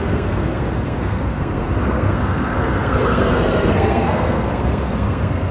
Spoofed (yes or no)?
yes